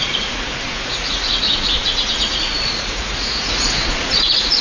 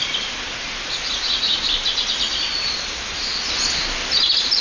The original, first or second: second